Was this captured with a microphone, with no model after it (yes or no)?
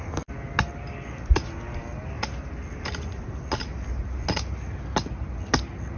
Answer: yes